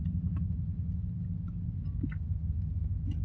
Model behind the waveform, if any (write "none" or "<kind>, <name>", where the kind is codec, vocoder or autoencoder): none